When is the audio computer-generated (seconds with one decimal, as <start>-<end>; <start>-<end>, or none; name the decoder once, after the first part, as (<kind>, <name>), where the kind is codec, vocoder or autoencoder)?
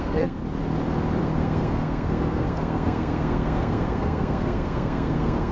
0.0-0.4 (codec, SNAC); 1.2-5.5